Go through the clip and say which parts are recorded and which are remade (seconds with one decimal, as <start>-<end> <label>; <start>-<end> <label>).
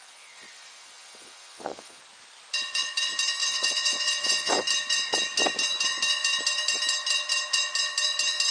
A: 0.0-2.0 remade; 2.0-3.4 recorded; 3.4-4.5 remade; 4.5-8.5 recorded